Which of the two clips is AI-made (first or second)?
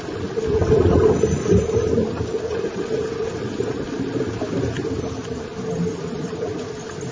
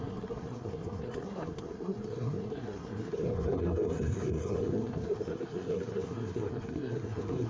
second